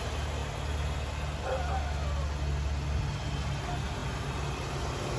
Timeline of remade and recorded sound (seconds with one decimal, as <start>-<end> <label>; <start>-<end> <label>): 0.0-5.2 recorded